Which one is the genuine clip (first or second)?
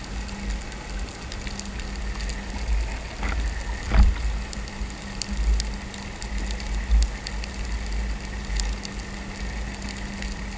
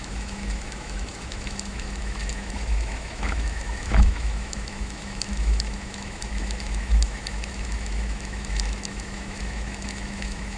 first